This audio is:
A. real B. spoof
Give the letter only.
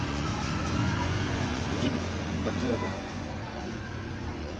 B